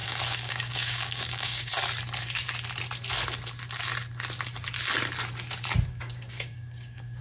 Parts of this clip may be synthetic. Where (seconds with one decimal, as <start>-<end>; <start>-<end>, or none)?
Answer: 0.0-1.7; 5.9-7.2